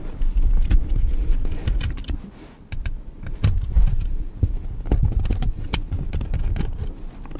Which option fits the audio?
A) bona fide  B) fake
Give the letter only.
A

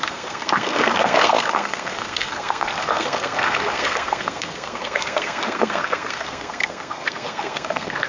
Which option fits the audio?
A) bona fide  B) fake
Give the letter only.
B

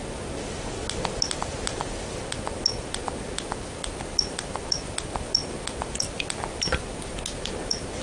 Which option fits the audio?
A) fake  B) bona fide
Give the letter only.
B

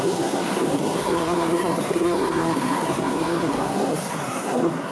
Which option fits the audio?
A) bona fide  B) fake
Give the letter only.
B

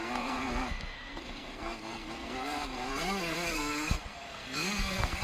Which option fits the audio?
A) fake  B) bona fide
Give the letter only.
A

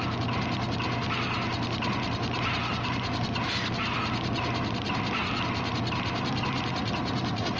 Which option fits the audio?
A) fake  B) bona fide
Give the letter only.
B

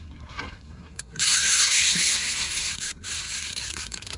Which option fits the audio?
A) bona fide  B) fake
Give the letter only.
B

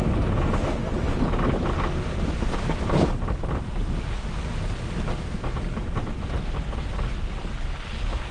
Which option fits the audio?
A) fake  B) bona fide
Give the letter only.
B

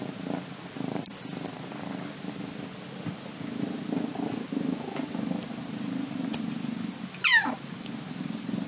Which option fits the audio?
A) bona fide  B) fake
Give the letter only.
A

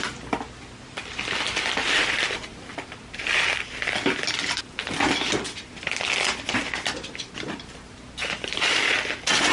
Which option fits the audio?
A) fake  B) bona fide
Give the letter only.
B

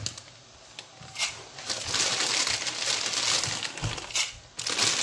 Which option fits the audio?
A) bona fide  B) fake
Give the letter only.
A